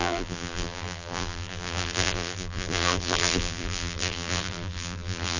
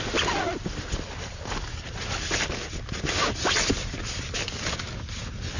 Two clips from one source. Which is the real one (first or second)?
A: second